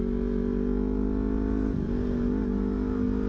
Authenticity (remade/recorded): recorded